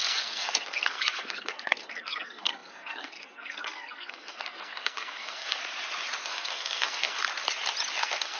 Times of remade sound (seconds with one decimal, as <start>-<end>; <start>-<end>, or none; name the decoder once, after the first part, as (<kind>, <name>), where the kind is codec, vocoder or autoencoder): 0.0-5.6 (codec, SNAC); 6.2-7.2; 8.0-8.4